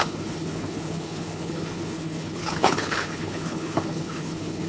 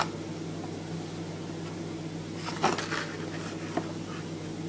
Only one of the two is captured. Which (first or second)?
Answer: second